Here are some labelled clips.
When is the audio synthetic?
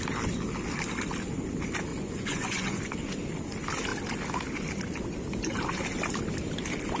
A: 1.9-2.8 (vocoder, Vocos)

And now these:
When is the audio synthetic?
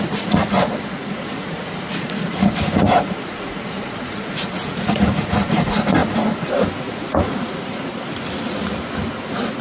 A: 0.0-6.0 (vocoder, Vocos); 6.8-7.9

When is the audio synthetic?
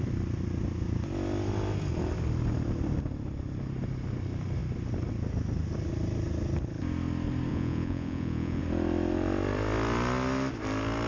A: 7.5-8.6 (vocoder, Vocos)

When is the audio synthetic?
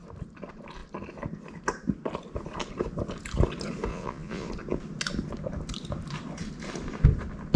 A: 3.9-4.5 (vocoder, Vocos)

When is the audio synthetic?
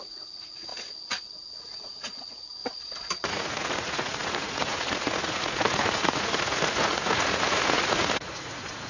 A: 0.0-0.7 (vocoder, Vocos); 1.5-2.6; 3.1-8.9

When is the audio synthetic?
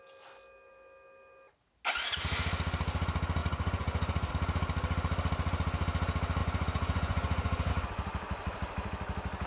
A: 3.4-4.3 (vocoder, Vocos); 6.4-7.7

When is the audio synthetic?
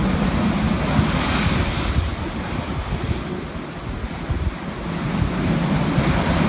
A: none